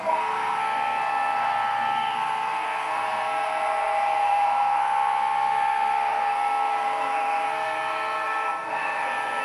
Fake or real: fake